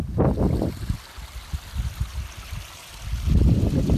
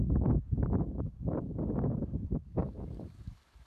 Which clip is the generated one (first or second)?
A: second